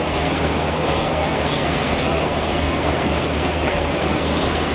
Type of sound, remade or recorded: remade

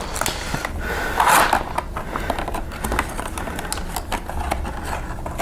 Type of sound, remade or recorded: recorded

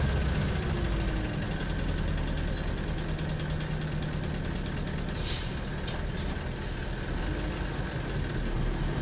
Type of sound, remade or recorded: recorded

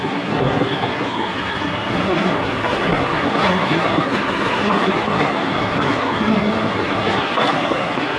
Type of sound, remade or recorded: remade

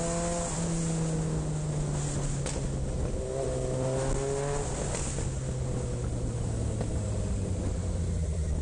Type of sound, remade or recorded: recorded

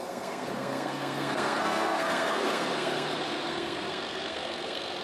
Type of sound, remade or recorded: remade